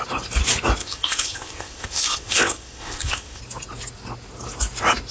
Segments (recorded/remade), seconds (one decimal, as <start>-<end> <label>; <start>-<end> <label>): 0.0-0.8 recorded; 0.8-3.4 remade; 3.4-5.1 recorded